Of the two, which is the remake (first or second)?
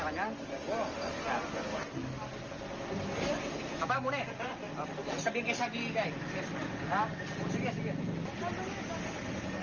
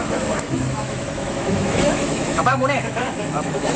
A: second